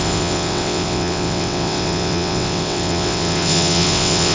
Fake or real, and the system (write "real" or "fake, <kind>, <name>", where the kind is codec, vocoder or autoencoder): fake, vocoder, WaveNeXt